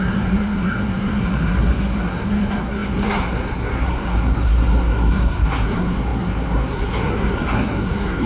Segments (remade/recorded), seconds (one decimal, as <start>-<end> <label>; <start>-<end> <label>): 0.0-8.3 remade